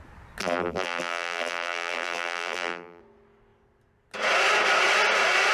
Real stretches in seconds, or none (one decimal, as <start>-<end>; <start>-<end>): 0.0-0.4; 3.0-5.5